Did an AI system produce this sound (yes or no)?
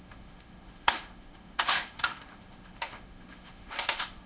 yes